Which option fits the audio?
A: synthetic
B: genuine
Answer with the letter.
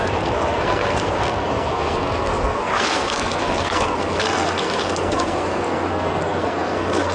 A